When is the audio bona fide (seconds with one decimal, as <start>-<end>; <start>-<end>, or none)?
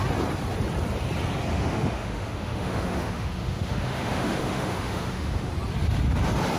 0.0-1.5; 5.5-6.6